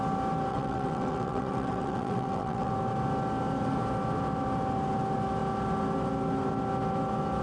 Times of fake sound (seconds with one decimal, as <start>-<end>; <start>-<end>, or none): 0.5-2.7